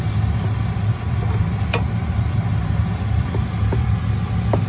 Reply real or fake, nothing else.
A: real